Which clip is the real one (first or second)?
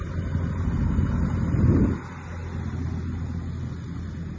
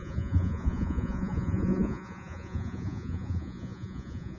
first